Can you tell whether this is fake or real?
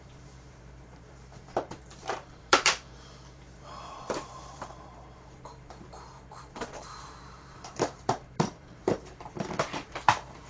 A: fake